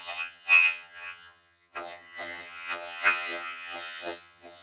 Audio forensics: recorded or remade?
remade